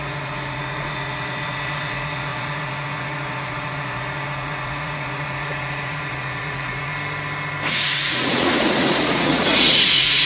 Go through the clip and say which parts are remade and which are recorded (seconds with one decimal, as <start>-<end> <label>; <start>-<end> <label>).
0.0-6.9 remade; 6.9-7.7 recorded; 7.7-10.2 remade